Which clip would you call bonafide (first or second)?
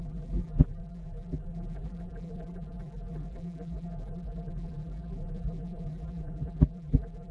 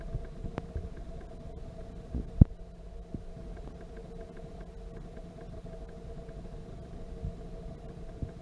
second